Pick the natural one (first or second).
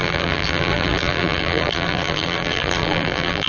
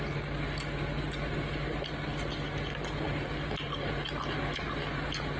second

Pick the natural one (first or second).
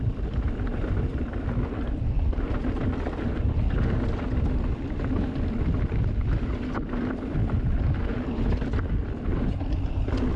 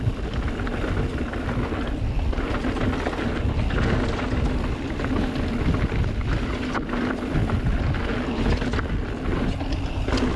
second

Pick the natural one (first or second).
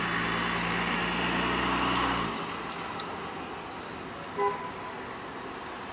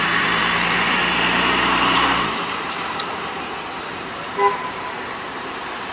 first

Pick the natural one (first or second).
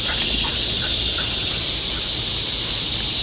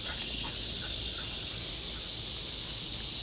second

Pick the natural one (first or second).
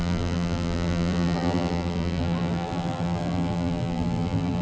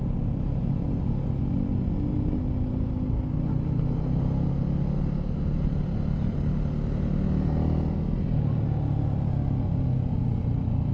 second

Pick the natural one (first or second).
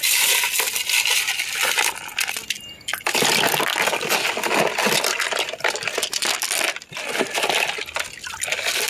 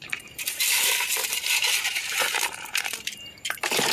first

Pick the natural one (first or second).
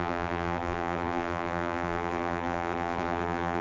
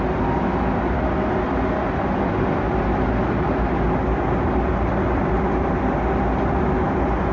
second